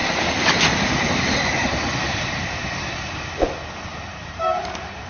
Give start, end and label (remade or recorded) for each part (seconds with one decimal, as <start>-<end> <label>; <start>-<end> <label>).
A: 0.0-2.2 recorded; 2.2-2.6 remade; 2.6-4.0 recorded; 4.0-5.1 remade